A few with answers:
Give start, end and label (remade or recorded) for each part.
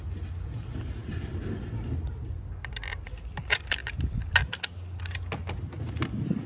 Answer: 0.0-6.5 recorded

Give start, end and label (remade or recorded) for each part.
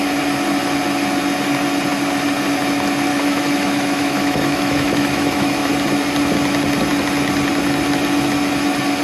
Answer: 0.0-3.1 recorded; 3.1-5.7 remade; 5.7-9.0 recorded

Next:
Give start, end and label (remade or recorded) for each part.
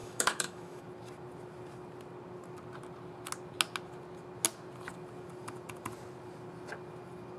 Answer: 0.0-0.8 remade; 0.8-7.4 recorded